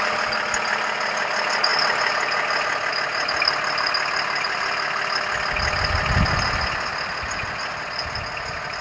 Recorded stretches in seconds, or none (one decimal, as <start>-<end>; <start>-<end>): 0.0-8.8